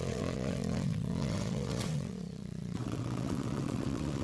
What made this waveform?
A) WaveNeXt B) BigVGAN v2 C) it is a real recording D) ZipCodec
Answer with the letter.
A